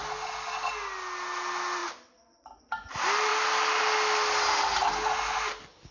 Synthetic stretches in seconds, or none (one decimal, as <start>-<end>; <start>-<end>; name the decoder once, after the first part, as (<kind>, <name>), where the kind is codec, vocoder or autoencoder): none